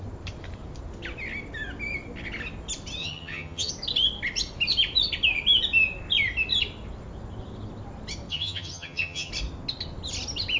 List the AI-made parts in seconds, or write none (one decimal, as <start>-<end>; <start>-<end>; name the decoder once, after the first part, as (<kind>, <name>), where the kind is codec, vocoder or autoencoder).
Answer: 3.0-3.7 (vocoder, HiFi-GAN); 8.3-9.3